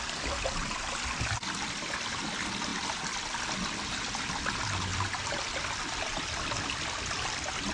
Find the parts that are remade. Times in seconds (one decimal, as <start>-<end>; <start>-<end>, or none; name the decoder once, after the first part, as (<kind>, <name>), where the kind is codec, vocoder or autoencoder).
4.9-5.4 (vocoder, BigVGAN v2)